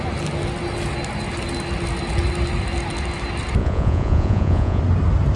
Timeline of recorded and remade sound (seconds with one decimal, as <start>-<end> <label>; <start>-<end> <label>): 0.0-3.6 recorded; 3.6-4.8 remade; 4.8-5.4 recorded